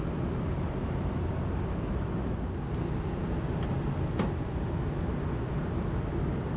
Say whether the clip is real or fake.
real